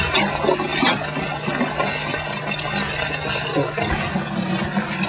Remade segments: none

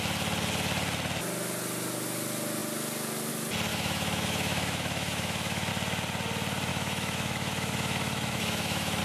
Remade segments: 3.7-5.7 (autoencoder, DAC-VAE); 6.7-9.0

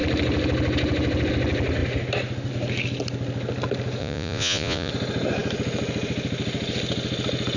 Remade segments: 4.0-4.9 (vocoder, Vocos)

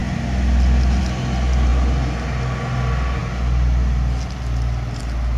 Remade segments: none

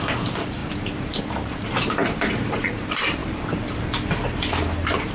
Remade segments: 0.0-3.2 (vocoder, BigVGAN v2); 4.5-5.1

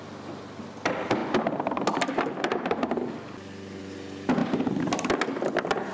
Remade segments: none